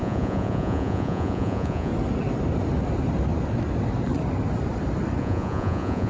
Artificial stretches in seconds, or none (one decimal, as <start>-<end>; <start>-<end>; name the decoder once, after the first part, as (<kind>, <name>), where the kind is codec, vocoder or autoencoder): 0.0-1.9 (vocoder, Vocos); 5.2-6.1

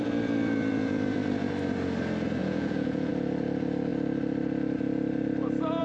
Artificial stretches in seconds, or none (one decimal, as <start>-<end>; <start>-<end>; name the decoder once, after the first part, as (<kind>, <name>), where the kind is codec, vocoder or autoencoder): 2.4-3.1 (vocoder, Vocos)

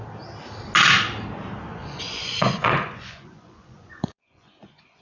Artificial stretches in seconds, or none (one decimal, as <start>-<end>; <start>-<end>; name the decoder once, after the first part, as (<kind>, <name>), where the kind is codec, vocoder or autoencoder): 1.7-5.0 (vocoder, Vocos)

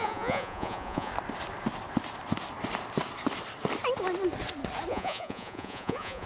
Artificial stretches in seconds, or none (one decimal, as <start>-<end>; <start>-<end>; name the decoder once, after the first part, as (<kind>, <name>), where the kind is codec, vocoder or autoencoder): 0.0-1.1 (vocoder, Vocos); 4.9-6.3

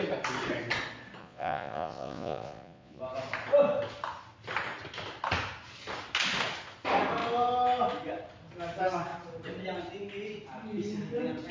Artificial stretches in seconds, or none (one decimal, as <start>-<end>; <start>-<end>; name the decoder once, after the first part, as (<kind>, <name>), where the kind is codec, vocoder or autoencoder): 1.2-3.0 (vocoder, Vocos)

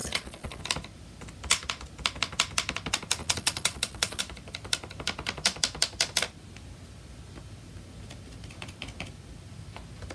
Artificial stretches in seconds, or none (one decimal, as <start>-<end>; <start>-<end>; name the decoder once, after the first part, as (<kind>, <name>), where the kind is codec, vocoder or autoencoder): 0.0-0.6 (vocoder, Vocos); 3.2-4.2